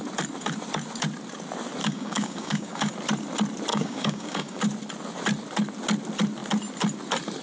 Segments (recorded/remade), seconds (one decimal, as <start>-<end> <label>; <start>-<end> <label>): 0.0-1.8 recorded; 1.8-2.9 remade; 2.9-3.7 recorded; 3.7-4.6 remade; 4.6-7.4 recorded